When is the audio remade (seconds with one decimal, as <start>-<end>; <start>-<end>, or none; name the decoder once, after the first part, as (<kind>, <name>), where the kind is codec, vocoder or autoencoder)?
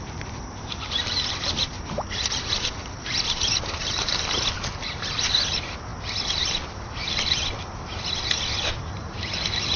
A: none